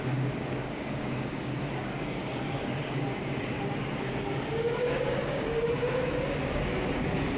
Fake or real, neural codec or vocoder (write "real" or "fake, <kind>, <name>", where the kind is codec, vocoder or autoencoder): fake, codec, DAC